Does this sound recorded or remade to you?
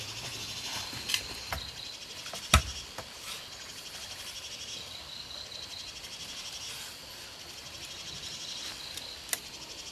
recorded